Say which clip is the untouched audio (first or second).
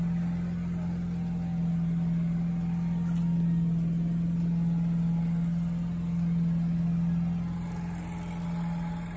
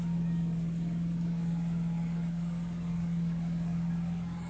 first